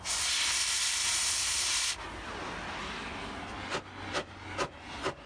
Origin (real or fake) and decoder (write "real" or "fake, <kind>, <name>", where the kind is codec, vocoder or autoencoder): real